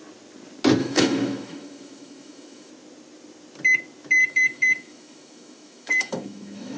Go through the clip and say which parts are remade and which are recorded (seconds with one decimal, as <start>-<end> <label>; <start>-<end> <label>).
0.0-0.8 recorded; 0.8-2.7 remade; 2.7-4.2 recorded; 4.2-6.8 remade

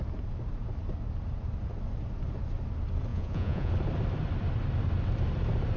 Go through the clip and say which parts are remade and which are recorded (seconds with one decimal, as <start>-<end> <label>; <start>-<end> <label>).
0.0-3.1 recorded; 3.1-3.7 remade; 3.7-5.8 recorded

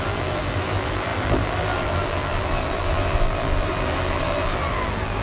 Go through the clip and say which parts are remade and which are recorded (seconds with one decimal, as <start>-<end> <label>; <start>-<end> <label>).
0.0-5.2 remade